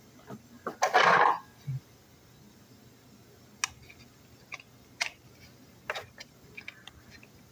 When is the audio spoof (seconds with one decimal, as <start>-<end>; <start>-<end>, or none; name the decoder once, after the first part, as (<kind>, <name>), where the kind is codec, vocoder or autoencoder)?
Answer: none